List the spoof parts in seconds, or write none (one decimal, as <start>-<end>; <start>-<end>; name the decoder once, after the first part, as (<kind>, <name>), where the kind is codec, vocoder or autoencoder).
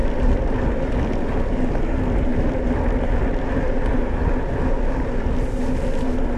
none